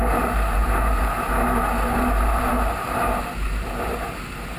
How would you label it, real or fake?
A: fake